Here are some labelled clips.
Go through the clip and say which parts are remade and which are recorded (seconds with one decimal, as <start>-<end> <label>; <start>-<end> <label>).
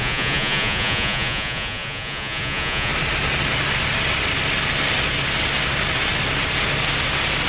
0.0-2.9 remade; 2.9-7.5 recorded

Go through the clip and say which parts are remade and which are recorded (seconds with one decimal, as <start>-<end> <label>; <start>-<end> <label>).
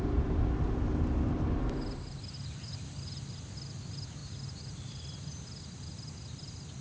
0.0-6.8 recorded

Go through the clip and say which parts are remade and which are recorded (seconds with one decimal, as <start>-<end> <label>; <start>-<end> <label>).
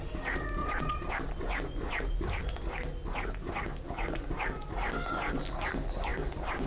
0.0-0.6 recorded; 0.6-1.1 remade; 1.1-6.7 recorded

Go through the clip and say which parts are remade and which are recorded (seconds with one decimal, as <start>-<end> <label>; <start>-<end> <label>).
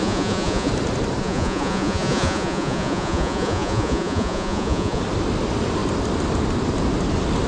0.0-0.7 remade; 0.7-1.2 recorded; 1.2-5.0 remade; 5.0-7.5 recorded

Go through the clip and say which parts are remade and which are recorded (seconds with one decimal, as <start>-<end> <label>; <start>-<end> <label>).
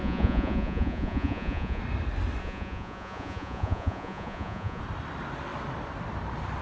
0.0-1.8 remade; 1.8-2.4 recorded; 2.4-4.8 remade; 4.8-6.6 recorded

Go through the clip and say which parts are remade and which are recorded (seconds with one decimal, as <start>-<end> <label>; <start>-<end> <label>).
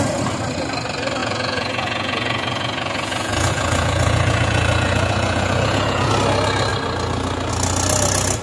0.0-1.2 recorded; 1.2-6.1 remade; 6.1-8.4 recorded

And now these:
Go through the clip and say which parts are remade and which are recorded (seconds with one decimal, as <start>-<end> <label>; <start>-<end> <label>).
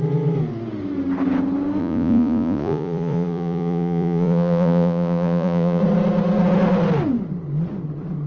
0.0-1.8 recorded; 1.8-5.8 remade; 5.8-8.3 recorded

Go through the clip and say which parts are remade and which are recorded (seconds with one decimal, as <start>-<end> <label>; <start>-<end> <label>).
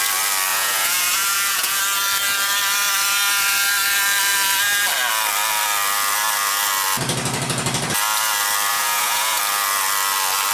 0.0-0.5 recorded; 0.5-1.8 remade; 1.8-8.7 recorded; 8.7-9.4 remade; 9.4-10.5 recorded